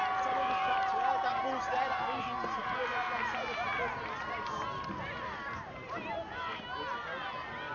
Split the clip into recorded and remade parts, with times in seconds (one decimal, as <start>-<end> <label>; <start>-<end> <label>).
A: 0.0-7.7 recorded